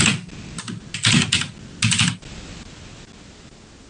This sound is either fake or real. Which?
real